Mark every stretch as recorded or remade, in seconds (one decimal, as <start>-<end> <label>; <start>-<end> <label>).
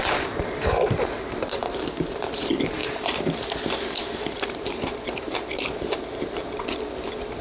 0.0-7.4 remade